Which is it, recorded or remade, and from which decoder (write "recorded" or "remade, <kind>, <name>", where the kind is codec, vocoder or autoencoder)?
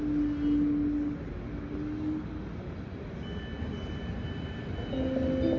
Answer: recorded